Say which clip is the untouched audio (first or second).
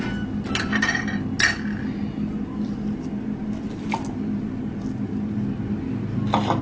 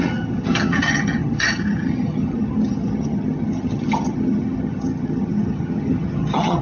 first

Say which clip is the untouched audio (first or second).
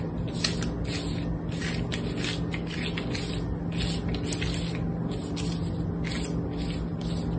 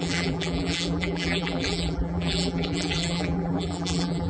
first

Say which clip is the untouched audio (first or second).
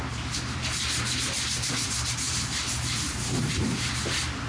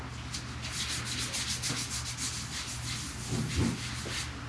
second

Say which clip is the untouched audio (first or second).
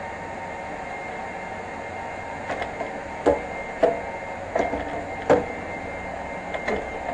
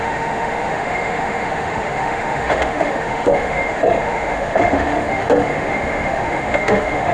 first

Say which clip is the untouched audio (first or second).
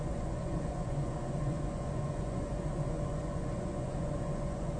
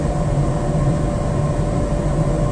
second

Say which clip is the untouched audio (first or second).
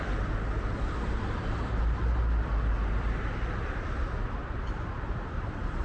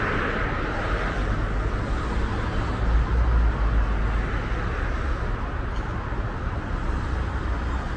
second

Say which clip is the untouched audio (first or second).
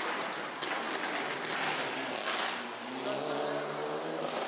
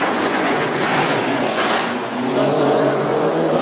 first